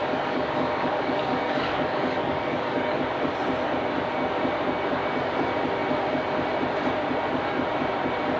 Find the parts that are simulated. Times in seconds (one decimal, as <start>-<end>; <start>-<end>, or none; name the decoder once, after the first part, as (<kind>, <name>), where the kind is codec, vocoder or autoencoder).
0.0-3.0 (codec, DAC)